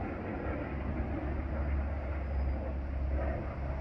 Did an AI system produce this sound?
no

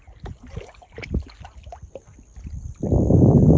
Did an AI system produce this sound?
no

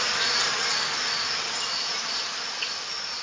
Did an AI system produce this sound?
no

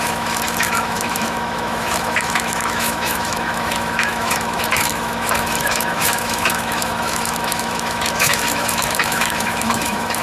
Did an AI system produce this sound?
yes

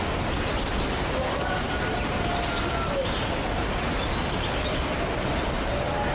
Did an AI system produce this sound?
no